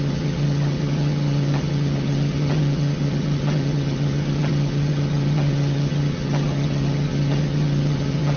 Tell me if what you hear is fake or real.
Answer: fake